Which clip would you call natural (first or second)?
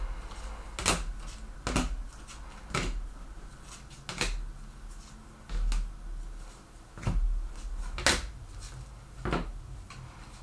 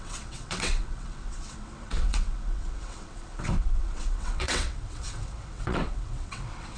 first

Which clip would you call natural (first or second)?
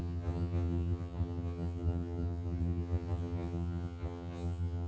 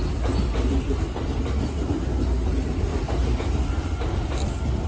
second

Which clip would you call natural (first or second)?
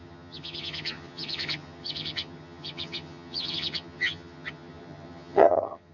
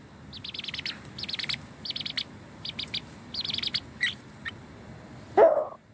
second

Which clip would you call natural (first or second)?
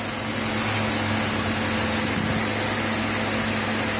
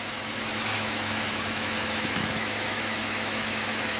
first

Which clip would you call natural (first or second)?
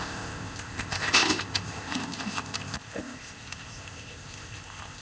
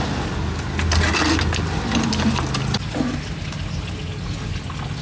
second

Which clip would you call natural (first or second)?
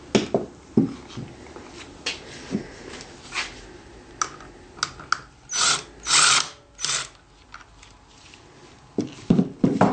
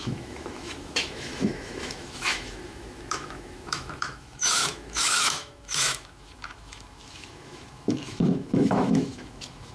first